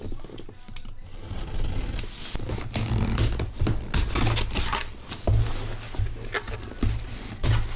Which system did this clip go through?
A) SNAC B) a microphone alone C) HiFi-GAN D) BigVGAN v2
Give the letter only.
B